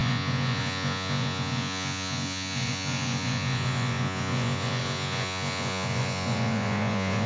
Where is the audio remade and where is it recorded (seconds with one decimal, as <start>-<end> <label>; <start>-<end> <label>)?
0.0-7.3 remade

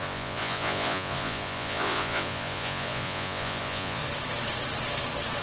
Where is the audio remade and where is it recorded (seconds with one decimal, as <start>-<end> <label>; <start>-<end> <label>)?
0.0-4.0 remade; 4.0-5.4 recorded

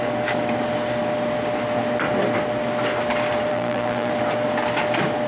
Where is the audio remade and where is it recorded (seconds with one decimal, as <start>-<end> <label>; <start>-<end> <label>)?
0.0-3.5 recorded; 3.5-4.1 remade; 4.1-5.3 recorded

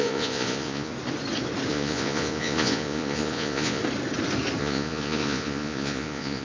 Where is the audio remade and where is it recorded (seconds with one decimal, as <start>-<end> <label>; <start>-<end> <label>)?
0.0-0.9 remade; 0.9-1.7 recorded; 1.7-3.8 remade; 3.8-4.6 recorded; 4.6-6.4 remade

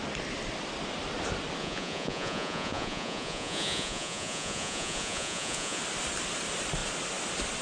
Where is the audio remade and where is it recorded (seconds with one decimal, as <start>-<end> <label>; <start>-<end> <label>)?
0.0-1.6 recorded; 1.6-5.8 remade; 5.8-7.6 recorded

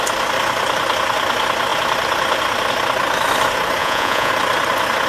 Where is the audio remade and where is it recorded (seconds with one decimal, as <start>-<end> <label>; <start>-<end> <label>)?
0.0-3.8 recorded; 3.8-4.3 remade; 4.3-5.1 recorded